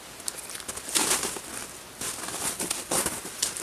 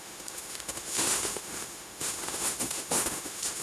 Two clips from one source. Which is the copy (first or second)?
second